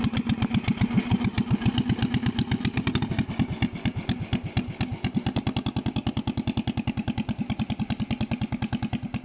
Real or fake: real